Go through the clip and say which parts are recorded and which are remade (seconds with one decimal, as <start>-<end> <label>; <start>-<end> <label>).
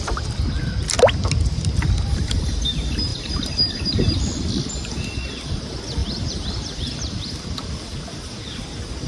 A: 0.0-3.1 recorded; 3.1-4.7 remade; 4.7-6.0 recorded; 6.0-8.2 remade; 8.2-9.1 recorded